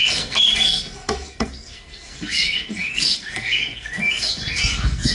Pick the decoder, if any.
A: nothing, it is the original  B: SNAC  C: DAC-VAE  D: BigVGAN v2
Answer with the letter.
B